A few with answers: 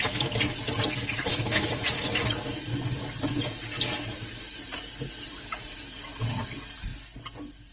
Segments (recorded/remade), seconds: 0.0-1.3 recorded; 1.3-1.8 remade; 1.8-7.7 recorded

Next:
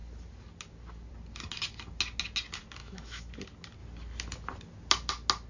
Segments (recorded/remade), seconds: 0.0-2.8 recorded; 2.8-3.3 remade; 3.3-5.5 recorded

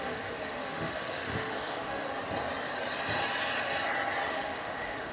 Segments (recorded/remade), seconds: 0.0-2.1 remade; 2.1-4.3 recorded; 4.3-5.1 remade

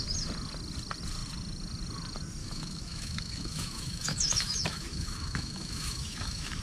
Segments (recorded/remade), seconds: 0.0-2.4 recorded; 2.4-6.6 remade

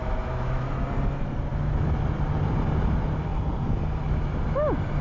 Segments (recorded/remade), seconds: 0.0-0.7 remade; 0.7-1.5 recorded; 1.5-2.0 remade; 2.0-5.0 recorded